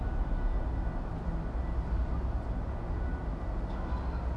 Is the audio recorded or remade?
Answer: recorded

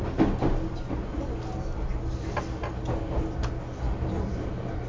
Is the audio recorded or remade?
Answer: recorded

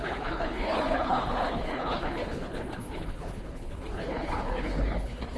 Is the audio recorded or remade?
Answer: remade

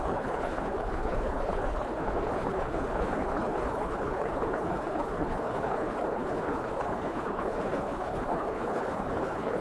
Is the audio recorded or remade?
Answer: remade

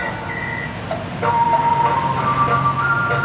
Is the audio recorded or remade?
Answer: recorded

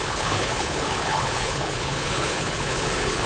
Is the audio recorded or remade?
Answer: remade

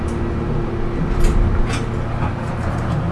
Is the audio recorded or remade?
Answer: recorded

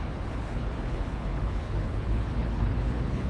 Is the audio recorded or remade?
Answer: remade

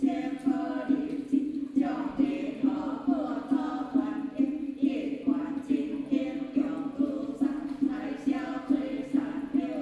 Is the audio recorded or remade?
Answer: recorded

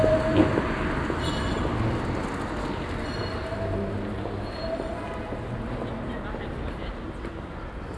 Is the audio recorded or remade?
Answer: recorded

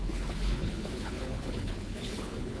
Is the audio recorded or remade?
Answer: remade